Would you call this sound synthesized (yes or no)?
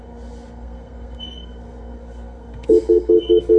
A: yes